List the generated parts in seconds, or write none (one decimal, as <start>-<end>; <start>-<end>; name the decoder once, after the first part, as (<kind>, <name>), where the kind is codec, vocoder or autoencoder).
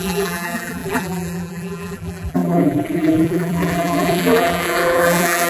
0.0-5.5 (vocoder, BigVGAN v2)